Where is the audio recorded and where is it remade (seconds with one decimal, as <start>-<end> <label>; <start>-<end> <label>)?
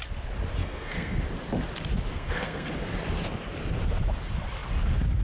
0.0-0.6 recorded; 0.6-1.2 remade; 1.2-2.1 recorded; 2.1-2.7 remade; 2.7-5.2 recorded